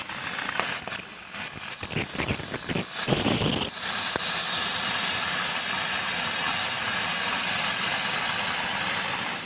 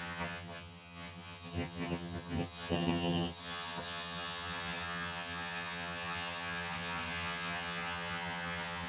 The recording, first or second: first